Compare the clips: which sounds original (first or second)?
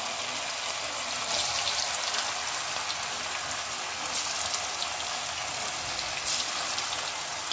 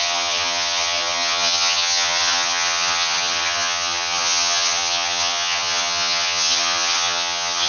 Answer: first